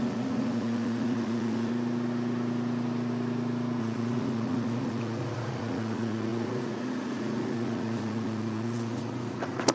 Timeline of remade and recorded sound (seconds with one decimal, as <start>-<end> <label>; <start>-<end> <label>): 0.0-1.7 remade; 1.7-3.8 recorded; 3.8-9.7 remade